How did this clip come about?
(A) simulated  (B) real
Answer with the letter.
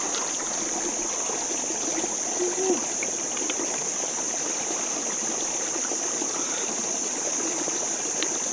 B